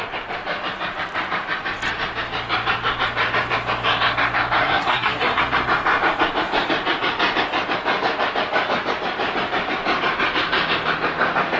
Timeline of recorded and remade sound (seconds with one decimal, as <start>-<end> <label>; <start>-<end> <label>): 0.0-4.6 recorded; 4.6-5.4 remade; 5.4-11.6 recorded

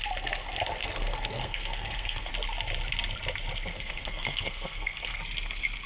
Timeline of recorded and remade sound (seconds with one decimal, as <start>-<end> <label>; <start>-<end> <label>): 0.0-0.8 recorded; 0.8-2.3 remade; 2.3-3.7 recorded; 3.7-5.2 remade; 5.2-5.9 recorded

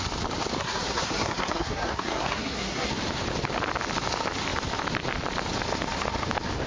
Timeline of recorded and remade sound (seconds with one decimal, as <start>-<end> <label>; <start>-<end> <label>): 0.0-0.6 recorded; 0.6-2.9 remade; 2.9-6.7 recorded

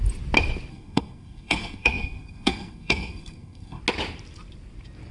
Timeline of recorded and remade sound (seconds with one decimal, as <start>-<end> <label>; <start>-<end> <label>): 0.0-0.7 recorded; 0.7-3.8 remade; 3.8-5.1 recorded

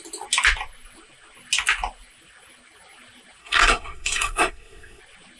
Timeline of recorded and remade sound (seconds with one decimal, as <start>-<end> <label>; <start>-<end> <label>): 0.0-3.4 recorded; 3.4-5.0 remade; 5.0-5.4 recorded

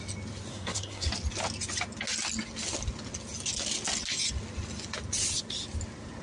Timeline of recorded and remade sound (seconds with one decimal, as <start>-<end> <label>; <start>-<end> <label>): 0.0-0.5 recorded; 0.5-1.1 remade; 1.1-6.2 recorded